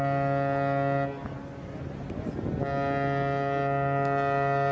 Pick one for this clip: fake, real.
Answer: real